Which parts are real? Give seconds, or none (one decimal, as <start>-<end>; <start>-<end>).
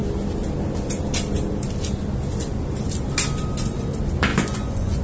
0.0-4.3